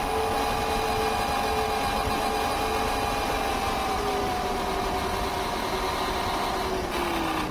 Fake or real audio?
real